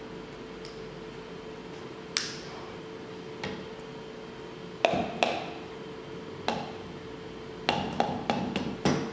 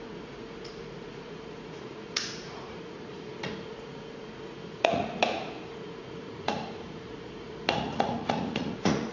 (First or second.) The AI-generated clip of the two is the second